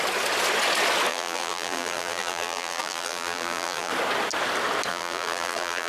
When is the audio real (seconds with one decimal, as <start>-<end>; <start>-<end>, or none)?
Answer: 0.0-1.1; 3.9-4.9